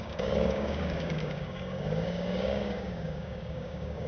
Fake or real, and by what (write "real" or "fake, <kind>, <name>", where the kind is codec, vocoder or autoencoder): fake, codec, DAC